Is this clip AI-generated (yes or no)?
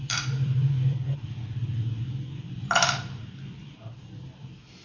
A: yes